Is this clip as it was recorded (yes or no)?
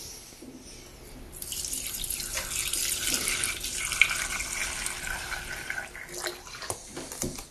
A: no